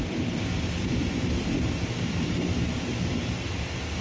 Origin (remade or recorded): remade